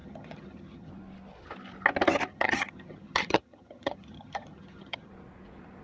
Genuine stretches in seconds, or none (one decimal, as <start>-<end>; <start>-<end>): 0.9-2.3; 5.1-5.8